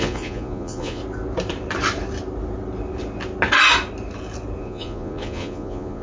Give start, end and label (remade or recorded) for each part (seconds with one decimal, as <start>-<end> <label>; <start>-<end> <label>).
0.0-1.0 remade; 1.0-4.6 recorded; 4.6-6.0 remade